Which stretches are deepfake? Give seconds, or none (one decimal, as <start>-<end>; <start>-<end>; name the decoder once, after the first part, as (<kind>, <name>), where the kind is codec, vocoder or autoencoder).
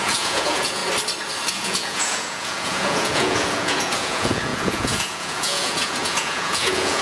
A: 0.0-0.8 (vocoder, Vocos); 1.5-7.0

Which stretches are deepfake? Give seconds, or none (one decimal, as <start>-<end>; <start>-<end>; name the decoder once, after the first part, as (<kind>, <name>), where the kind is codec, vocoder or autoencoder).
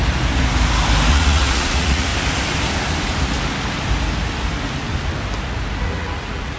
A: 1.1-2.1 (vocoder, Vocos); 5.8-6.6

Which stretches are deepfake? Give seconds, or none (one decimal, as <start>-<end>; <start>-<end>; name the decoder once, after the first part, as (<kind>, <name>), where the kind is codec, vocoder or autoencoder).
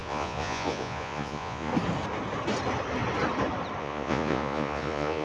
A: 0.0-1.7 (vocoder, Vocos); 3.8-5.2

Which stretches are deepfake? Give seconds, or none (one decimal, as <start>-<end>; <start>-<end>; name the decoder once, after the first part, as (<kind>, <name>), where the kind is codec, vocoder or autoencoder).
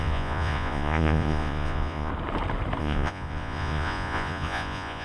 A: 0.0-2.1 (vocoder, Vocos); 2.8-5.0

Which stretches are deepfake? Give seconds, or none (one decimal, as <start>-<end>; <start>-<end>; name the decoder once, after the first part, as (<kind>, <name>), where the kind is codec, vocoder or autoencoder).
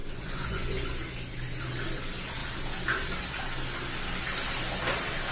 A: 0.0-0.9 (vocoder, Vocos)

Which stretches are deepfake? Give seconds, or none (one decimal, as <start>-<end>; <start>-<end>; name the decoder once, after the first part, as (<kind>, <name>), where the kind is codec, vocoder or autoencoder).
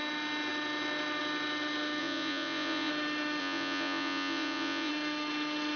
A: 2.0-2.9 (vocoder, Vocos); 3.4-4.9